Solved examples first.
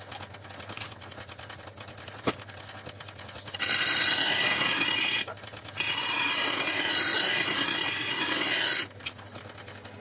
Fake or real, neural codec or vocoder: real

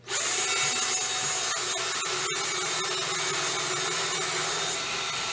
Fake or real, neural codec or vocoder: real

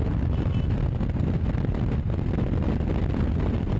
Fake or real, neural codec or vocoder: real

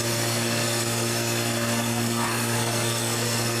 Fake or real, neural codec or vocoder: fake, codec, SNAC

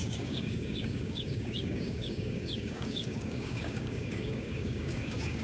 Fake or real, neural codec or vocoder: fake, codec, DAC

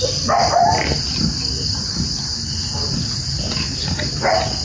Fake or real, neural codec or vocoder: real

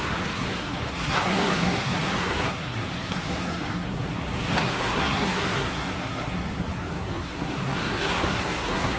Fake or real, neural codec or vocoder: fake, codec, SNAC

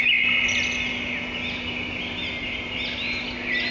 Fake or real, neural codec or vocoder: real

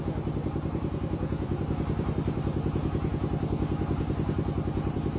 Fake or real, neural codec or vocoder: fake, vocoder, BigVGAN v2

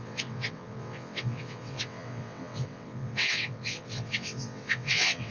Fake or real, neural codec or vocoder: fake, vocoder, WaveNeXt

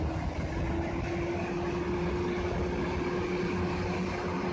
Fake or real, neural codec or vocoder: real